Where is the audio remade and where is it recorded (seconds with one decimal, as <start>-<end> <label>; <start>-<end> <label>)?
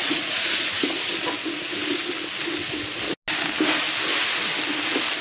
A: 0.0-1.1 remade; 1.1-5.2 recorded